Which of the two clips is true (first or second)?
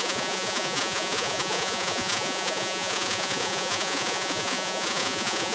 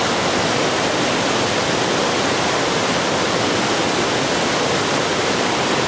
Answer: second